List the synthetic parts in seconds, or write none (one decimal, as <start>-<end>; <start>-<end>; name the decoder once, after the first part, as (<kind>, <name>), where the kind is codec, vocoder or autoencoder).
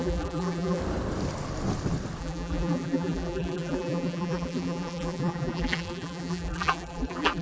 0.0-0.8 (vocoder, BigVGAN v2); 2.2-7.4